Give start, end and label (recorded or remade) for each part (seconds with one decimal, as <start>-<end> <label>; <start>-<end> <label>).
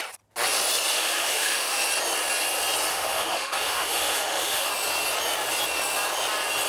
0.0-0.9 recorded; 0.9-1.8 remade; 1.8-2.9 recorded; 2.9-4.7 remade; 4.7-6.7 recorded